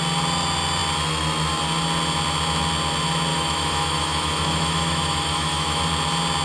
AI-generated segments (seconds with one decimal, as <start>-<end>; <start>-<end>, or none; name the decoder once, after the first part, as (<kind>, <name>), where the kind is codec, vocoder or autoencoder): 3.3-5.8 (autoencoder, DAC-VAE)